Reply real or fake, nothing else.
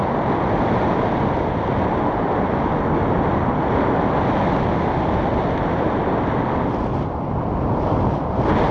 real